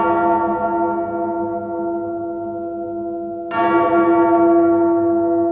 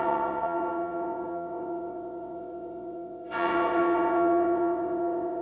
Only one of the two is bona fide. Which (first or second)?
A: first